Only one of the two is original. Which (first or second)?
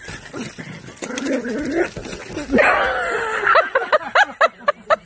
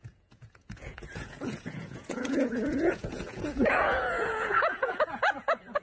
first